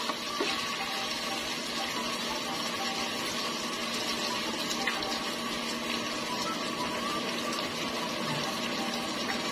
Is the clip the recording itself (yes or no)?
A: yes